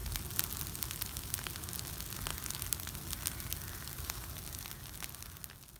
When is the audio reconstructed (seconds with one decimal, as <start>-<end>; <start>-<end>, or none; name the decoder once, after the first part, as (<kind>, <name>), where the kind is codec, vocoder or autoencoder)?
none